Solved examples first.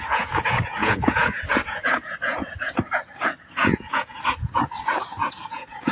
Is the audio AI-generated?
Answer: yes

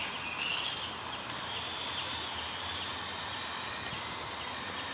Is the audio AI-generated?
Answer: no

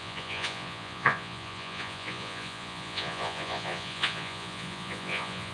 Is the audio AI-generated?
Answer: yes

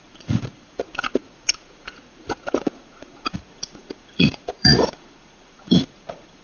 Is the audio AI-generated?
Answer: yes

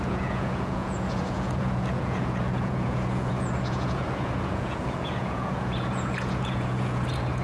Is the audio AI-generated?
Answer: yes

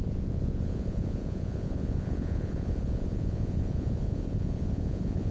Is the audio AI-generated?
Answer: yes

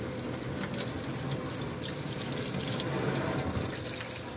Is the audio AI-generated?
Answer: no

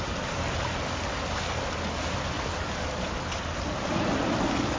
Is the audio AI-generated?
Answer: no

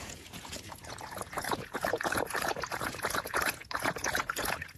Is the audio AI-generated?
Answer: yes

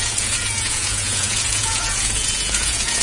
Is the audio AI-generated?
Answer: yes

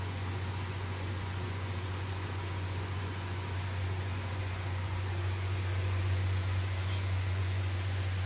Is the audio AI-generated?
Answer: yes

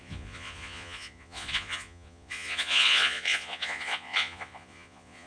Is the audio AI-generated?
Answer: yes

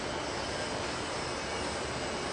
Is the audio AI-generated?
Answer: no